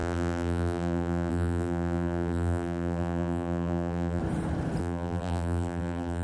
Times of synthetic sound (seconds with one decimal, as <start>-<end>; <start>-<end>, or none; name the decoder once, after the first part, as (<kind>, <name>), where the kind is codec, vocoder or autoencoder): 0.0-4.2 (vocoder, BigVGAN v2); 4.8-6.2